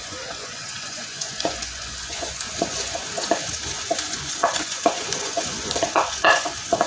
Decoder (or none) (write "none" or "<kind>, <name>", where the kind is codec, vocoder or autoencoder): vocoder, Vocos